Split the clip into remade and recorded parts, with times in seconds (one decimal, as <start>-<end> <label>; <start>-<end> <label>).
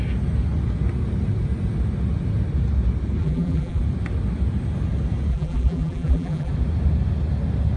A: 0.0-3.2 recorded; 3.2-3.8 remade; 3.8-5.3 recorded; 5.3-6.5 remade; 6.5-7.8 recorded